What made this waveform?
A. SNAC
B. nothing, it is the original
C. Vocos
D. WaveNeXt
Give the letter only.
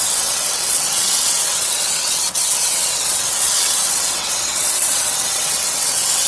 D